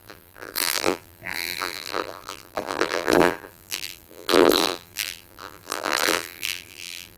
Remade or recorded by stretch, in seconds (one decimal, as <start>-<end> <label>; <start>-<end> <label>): 0.0-7.2 remade